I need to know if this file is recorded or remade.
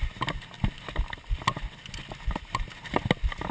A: recorded